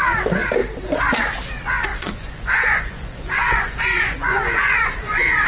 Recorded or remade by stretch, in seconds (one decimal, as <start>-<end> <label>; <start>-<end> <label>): 0.0-1.9 recorded; 1.9-5.5 remade